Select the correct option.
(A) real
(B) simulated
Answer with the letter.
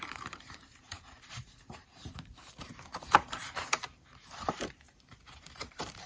B